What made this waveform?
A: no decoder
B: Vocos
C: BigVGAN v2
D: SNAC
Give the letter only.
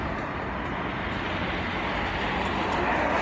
A